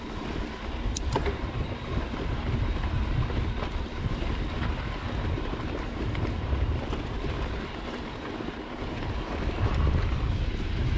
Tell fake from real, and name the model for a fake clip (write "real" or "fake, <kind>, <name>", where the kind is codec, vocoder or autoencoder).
real